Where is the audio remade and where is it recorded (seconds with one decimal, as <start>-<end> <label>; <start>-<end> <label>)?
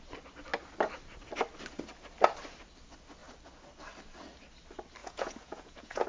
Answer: 0.0-5.0 recorded; 5.0-6.1 remade